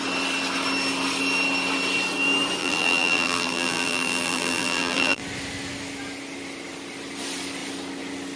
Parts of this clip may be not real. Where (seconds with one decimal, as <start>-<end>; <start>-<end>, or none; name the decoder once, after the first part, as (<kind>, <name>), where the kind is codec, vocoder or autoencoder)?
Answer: 2.6-5.2 (vocoder, BigVGAN v2)